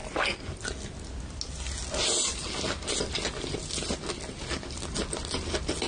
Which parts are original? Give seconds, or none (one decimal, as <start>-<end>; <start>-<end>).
0.0-5.9